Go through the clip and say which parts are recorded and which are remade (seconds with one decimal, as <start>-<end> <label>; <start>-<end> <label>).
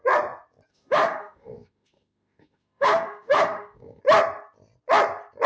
0.0-0.7 recorded; 0.7-4.0 remade; 4.0-5.5 recorded